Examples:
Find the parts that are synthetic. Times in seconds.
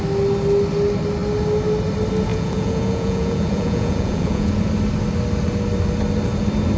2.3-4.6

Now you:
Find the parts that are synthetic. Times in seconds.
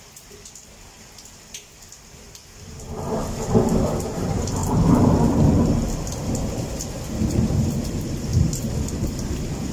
none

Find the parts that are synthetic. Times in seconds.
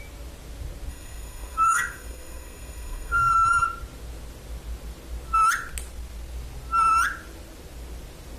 0.9-3.3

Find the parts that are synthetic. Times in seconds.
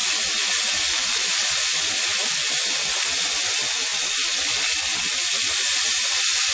none